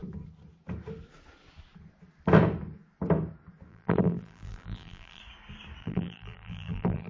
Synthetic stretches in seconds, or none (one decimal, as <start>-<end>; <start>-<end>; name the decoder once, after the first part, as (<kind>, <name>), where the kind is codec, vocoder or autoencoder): 3.7-5.2 (vocoder, BigVGAN v2); 5.8-7.1